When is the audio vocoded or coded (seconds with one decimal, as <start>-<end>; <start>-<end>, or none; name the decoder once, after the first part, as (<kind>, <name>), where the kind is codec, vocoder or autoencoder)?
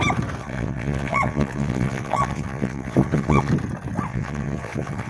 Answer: 0.4-3.5 (vocoder, WaveNeXt); 4.1-5.1